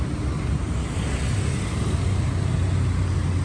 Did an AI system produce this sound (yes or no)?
no